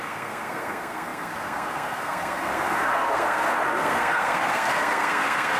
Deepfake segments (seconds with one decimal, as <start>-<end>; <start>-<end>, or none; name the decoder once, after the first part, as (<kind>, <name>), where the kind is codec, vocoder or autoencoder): 0.0-5.6 (codec, SNAC)